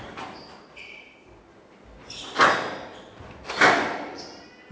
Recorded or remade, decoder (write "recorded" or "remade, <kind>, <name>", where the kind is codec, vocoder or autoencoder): recorded